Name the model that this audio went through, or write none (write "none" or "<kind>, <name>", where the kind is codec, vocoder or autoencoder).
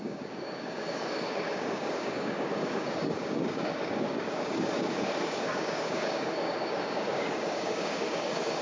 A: codec, DAC